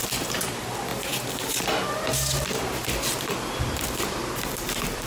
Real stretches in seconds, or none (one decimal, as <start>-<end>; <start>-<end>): 0.9-3.6